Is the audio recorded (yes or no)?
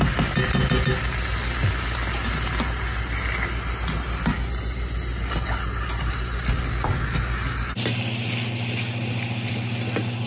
yes